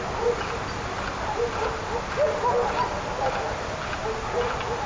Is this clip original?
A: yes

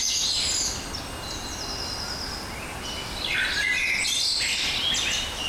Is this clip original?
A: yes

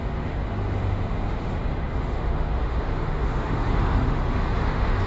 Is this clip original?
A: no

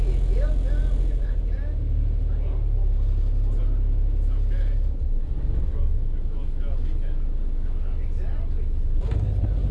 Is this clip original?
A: yes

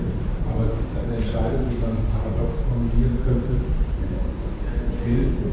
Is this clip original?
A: yes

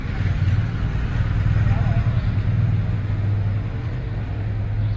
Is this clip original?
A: yes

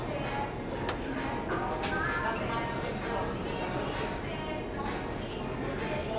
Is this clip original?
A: yes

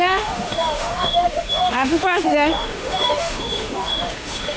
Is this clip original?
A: no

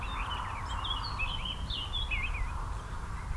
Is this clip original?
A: yes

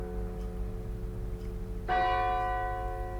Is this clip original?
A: yes